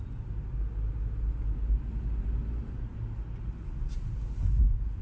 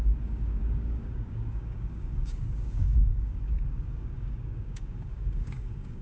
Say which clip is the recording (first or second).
first